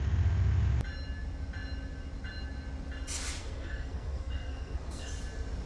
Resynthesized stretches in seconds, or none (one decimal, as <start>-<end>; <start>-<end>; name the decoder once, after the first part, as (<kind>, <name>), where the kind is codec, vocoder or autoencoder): 3.4-5.1 (codec, SNAC)